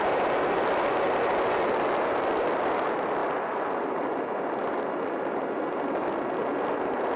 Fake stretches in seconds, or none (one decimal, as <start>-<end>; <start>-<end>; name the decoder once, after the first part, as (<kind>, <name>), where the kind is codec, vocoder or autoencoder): 3.2-5.6 (vocoder, BigVGAN v2)